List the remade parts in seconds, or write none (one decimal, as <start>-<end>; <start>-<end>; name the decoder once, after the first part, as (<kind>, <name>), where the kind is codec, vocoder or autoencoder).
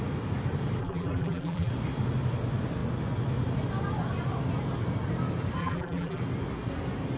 0.8-1.7 (vocoder, BigVGAN v2); 5.6-6.2